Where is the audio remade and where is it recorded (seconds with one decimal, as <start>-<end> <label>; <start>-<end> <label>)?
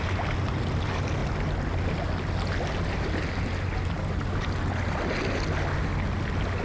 0.0-6.6 recorded